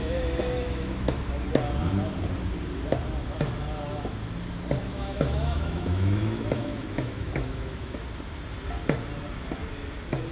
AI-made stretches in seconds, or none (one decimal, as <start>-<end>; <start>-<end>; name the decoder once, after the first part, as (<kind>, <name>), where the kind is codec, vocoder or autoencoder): 0.0-1.3 (autoencoder, DAC-VAE); 4.8-8.0

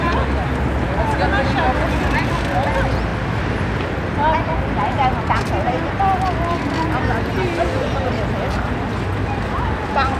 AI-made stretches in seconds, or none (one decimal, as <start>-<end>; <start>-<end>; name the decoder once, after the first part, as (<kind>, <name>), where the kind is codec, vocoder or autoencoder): none

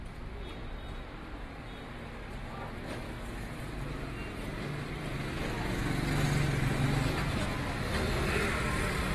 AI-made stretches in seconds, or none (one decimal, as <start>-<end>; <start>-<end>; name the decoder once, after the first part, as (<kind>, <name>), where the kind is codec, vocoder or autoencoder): none

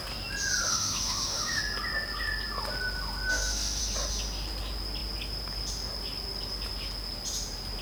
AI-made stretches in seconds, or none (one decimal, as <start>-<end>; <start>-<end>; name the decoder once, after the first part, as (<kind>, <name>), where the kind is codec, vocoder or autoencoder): 0.7-1.6 (autoencoder, DAC-VAE); 3.3-3.8

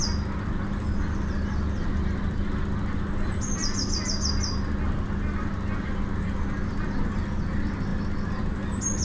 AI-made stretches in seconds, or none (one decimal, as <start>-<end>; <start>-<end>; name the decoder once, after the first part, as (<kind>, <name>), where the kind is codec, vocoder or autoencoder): none